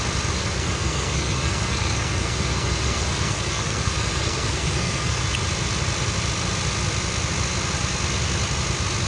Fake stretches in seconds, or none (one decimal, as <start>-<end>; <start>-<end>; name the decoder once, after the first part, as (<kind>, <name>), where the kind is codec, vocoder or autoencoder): 0.4-5.2 (codec, SNAC)

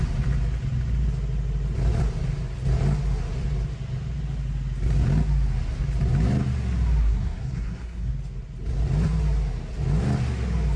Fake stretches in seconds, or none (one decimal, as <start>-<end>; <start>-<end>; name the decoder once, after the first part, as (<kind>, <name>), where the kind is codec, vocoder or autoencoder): 7.0-8.1 (codec, SNAC)